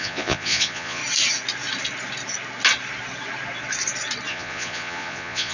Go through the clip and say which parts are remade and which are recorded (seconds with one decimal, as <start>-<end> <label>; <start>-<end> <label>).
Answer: 0.0-1.0 remade; 1.0-4.3 recorded; 4.3-5.5 remade